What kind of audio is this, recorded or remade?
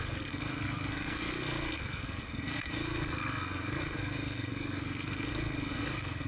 remade